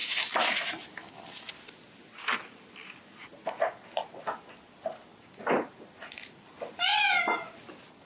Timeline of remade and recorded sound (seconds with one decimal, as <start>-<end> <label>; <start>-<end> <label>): 0.0-8.1 recorded

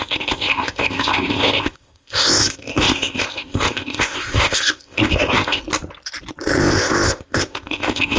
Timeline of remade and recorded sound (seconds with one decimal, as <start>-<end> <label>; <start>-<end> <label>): 0.0-5.6 remade; 5.6-6.6 recorded; 6.6-8.2 remade